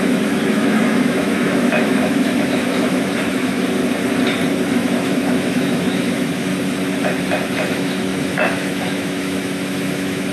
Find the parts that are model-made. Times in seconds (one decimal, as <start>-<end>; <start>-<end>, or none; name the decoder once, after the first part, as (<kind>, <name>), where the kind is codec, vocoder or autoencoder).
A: 0.0-3.8 (autoencoder, DAC-VAE); 4.7-6.5; 7.7-10.3